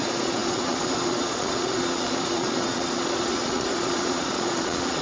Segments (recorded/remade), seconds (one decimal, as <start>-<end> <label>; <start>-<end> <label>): 0.0-5.0 remade